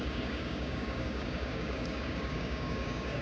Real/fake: fake